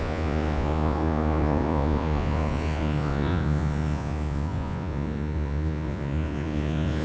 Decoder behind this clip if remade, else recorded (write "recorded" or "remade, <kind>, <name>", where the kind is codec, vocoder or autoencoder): remade, vocoder, Vocos